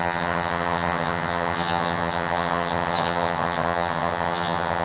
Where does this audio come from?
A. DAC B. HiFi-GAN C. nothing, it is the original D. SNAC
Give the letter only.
B